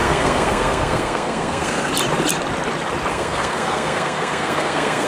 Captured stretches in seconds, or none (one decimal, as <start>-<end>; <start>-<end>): 1.9-3.1